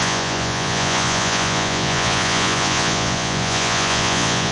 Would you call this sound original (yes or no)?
no